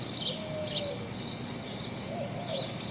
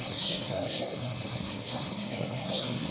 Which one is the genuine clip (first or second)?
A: first